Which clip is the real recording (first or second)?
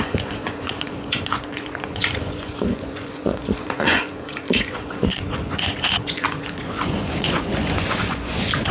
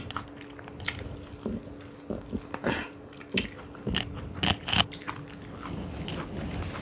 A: second